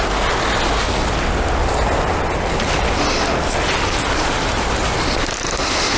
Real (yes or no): yes